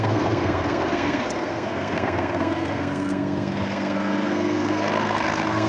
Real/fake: fake